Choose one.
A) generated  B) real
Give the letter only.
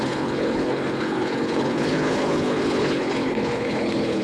A